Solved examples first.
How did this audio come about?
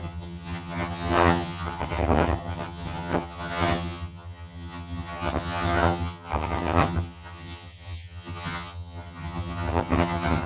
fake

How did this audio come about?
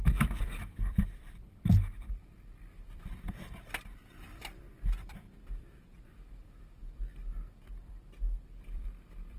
fake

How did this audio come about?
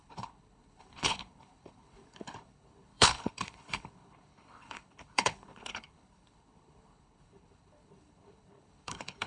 fake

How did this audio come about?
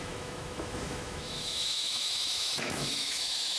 fake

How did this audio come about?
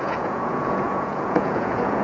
fake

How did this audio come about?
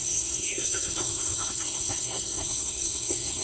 fake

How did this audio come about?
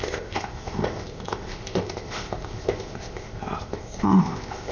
fake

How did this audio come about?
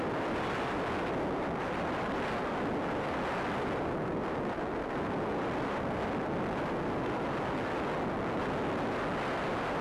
real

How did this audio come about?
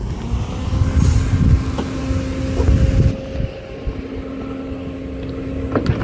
real